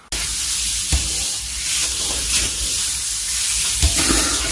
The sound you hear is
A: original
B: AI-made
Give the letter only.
A